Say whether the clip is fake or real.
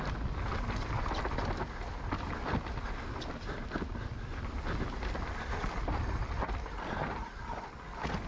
real